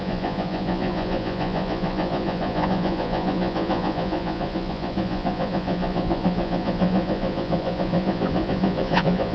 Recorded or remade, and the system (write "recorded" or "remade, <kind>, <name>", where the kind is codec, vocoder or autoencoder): remade, vocoder, Vocos